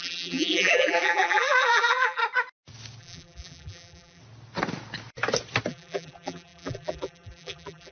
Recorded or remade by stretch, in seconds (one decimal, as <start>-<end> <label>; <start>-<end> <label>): 0.0-2.2 remade; 2.2-3.0 recorded; 3.0-4.2 remade; 4.2-5.7 recorded; 5.7-7.9 remade